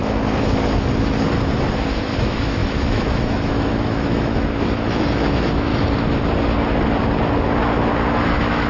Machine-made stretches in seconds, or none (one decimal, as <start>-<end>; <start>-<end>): 2.2-5.7; 8.1-8.7